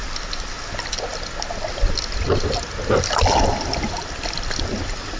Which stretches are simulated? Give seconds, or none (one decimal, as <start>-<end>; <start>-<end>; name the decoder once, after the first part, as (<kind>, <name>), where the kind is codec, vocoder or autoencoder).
none